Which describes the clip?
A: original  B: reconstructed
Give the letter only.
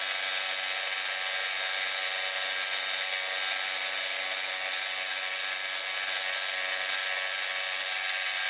A